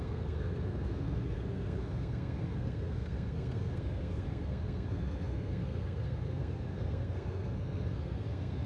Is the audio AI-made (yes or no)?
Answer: yes